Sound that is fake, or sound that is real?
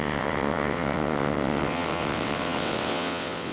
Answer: fake